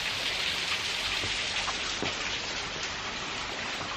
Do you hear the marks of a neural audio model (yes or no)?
yes